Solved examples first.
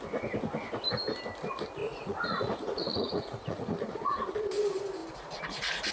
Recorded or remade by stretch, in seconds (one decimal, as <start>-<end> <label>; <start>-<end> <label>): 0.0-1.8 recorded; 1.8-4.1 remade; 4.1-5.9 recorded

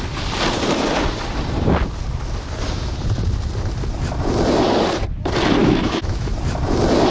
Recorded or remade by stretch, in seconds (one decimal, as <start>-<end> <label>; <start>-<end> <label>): 0.0-5.6 recorded; 5.6-6.3 remade; 6.3-7.1 recorded

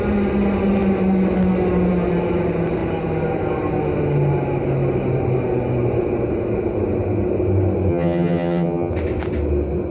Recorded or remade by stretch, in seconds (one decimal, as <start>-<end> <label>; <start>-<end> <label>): 0.0-7.9 recorded; 7.9-8.9 remade; 8.9-9.9 recorded

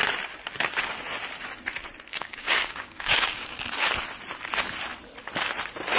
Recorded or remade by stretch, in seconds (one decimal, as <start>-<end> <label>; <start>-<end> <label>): 0.0-2.1 recorded; 2.1-3.6 remade; 3.6-6.0 recorded